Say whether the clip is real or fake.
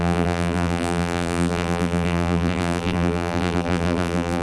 fake